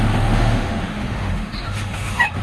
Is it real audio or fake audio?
fake